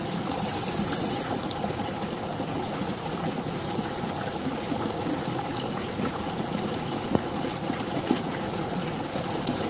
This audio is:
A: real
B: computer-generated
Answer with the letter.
B